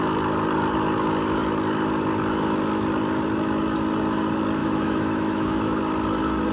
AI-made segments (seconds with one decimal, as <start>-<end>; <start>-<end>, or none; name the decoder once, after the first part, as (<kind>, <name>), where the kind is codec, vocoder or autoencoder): 4.6-5.8 (autoencoder, DAC-VAE)